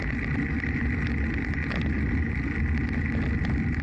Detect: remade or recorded recorded